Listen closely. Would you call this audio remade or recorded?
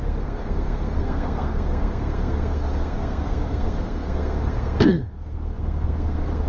remade